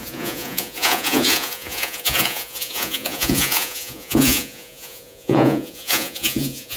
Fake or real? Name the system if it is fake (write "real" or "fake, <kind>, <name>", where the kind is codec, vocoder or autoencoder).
fake, vocoder, Vocos